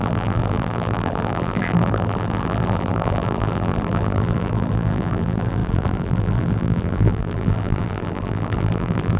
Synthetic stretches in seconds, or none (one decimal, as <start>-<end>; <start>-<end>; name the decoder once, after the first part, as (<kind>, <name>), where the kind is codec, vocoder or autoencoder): 0.0-9.2 (vocoder, BigVGAN v2)